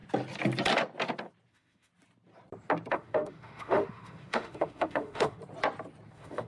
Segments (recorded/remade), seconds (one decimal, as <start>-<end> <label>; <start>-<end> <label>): 0.0-1.5 recorded; 1.5-1.9 remade; 1.9-2.9 recorded; 2.9-5.4 remade; 5.4-6.1 recorded; 6.1-6.5 remade